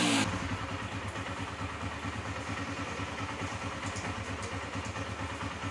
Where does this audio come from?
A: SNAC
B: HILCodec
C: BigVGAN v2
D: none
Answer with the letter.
D